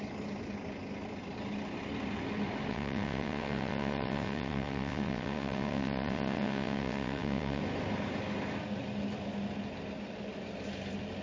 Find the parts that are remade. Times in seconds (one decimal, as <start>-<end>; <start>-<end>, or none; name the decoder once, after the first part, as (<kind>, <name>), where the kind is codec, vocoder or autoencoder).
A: 2.7-7.6 (vocoder, WaveNeXt)